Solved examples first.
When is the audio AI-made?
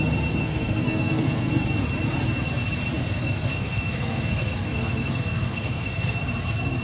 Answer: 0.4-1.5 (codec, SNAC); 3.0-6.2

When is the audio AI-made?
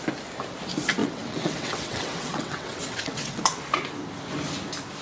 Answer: 1.0-3.4 (vocoder, WaveNeXt)